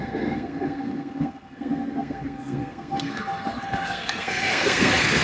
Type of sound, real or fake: fake